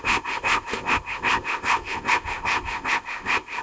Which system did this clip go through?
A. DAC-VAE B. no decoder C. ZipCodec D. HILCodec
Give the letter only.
C